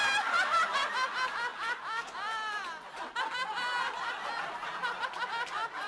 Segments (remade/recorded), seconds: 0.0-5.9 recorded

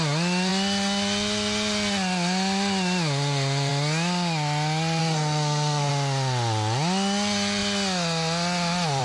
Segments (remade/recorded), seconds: 0.0-5.0 recorded; 5.0-5.9 remade; 5.9-9.0 recorded

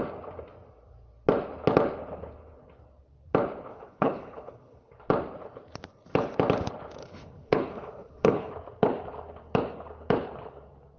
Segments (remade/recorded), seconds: 0.0-3.7 recorded; 3.7-4.9 remade; 4.9-7.0 recorded; 7.0-8.5 remade; 8.5-11.0 recorded

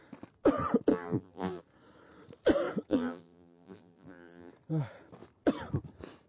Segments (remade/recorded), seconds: 0.0-0.9 recorded; 0.9-1.6 remade; 1.6-2.9 recorded; 2.9-4.5 remade; 4.5-6.3 recorded